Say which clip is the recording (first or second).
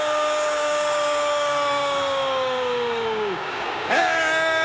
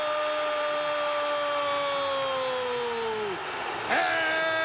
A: second